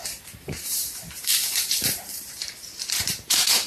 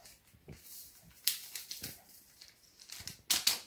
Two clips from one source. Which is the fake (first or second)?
first